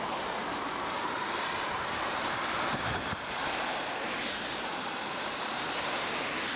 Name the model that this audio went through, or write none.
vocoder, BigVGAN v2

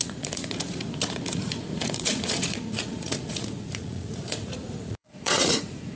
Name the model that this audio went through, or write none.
vocoder, Vocos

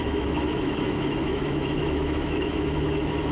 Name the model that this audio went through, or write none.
autoencoder, DAC-VAE